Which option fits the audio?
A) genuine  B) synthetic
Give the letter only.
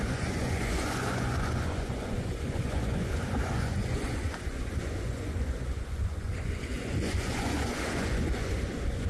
B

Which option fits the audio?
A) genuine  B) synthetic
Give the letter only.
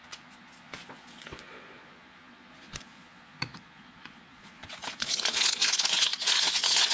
B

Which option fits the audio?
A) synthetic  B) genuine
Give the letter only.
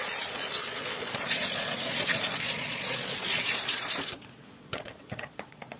A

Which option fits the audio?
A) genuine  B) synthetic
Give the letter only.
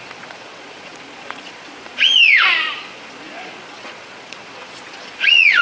B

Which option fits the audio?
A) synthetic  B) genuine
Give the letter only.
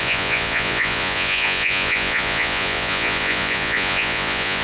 A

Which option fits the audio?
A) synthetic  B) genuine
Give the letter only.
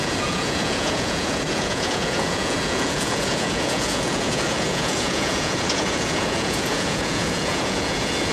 A